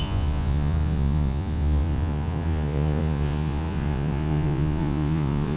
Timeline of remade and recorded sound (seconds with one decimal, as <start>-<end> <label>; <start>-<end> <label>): 0.0-5.6 remade